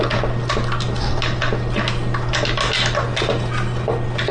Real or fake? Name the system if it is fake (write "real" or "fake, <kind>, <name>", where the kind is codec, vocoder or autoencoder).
real